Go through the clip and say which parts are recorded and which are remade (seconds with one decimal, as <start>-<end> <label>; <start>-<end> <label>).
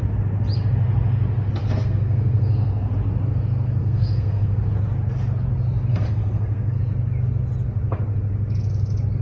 0.0-1.6 recorded; 1.6-2.9 remade; 2.9-3.8 recorded; 3.8-4.7 remade; 4.7-5.9 recorded; 5.9-6.8 remade; 6.8-9.2 recorded